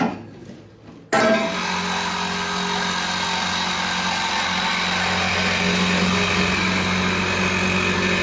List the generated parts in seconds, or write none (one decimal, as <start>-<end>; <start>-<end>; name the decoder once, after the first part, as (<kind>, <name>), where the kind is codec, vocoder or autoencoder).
none